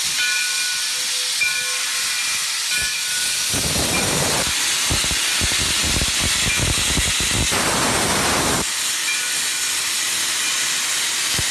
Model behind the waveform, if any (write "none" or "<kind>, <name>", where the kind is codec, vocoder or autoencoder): none